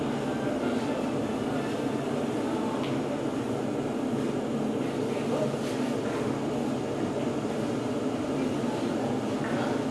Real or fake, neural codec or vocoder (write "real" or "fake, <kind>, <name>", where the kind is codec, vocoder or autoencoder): real